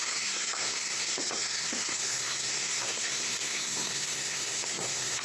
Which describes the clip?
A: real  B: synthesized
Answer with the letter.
B